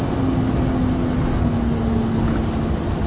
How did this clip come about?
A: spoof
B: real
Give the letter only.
B